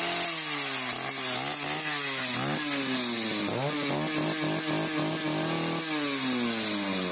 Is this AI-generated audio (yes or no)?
no